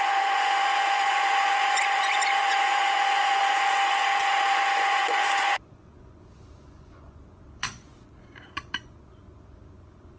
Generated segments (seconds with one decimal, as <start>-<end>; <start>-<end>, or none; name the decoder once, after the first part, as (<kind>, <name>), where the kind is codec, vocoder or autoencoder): 0.0-10.2 (vocoder, Vocos)